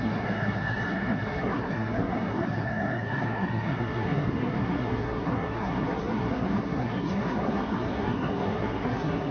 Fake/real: fake